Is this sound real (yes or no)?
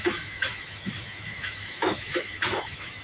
no